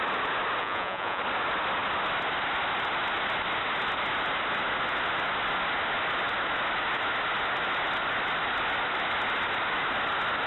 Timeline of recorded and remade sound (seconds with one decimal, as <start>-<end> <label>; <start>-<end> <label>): 0.0-0.6 recorded; 0.6-1.2 remade; 1.2-10.5 recorded